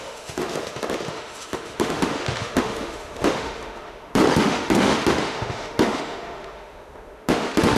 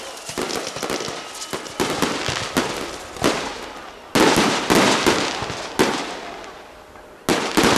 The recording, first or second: second